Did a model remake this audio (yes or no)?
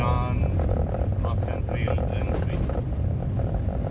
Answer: no